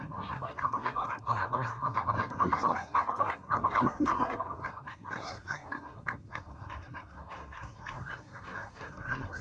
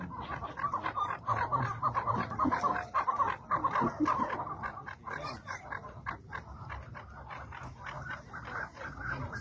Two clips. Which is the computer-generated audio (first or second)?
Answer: first